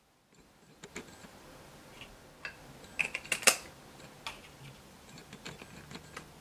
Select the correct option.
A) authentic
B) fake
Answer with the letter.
A